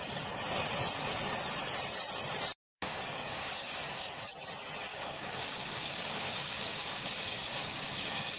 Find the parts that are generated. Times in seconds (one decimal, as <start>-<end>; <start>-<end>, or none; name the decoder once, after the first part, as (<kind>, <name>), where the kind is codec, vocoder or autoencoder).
2.7-4.1 (codec, DAC); 4.9-8.4